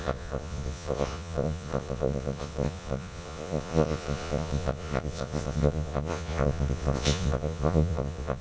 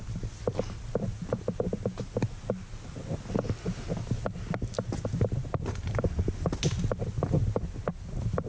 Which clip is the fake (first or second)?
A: first